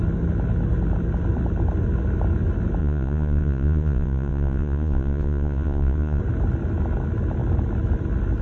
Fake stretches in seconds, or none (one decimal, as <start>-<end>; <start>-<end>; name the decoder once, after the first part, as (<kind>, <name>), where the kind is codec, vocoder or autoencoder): 2.8-6.2 (vocoder, Vocos)